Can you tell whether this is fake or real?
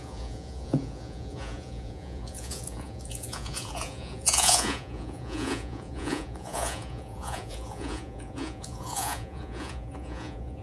fake